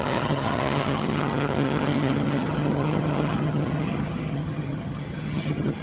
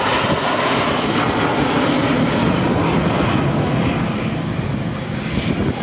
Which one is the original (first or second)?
second